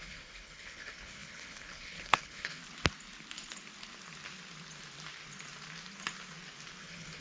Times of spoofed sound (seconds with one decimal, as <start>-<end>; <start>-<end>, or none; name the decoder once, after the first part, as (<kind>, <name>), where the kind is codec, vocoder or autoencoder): 0.0-2.6 (codec, HILCodec); 6.8-7.2